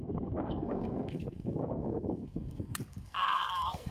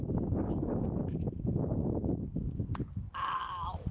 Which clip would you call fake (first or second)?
first